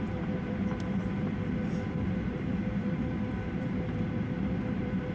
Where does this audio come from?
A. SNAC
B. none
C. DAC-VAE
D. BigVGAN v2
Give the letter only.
D